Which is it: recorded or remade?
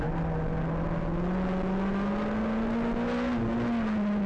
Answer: recorded